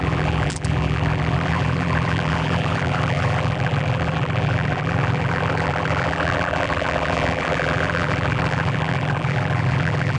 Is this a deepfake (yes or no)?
yes